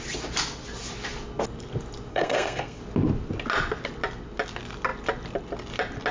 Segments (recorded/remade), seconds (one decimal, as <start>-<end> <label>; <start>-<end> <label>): 0.0-2.1 recorded; 2.1-2.8 remade; 2.8-6.1 recorded